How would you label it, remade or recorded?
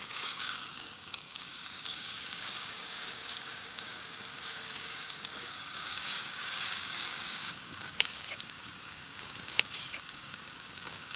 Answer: remade